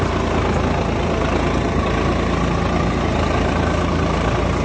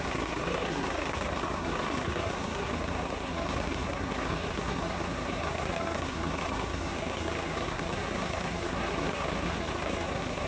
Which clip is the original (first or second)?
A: first